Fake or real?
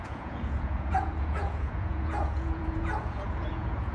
fake